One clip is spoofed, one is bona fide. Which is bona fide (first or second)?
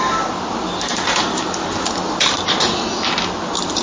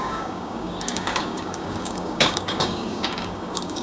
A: first